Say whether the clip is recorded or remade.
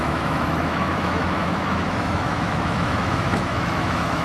remade